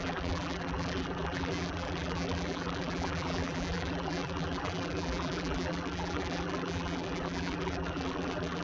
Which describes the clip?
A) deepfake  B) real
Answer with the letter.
A